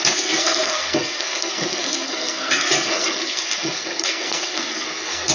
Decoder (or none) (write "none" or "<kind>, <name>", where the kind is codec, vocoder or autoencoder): codec, SNAC